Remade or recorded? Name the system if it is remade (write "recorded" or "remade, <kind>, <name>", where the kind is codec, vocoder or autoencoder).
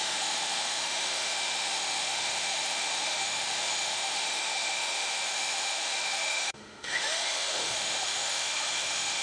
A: remade, autoencoder, DAC-VAE